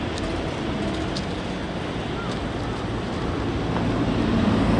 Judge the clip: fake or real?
fake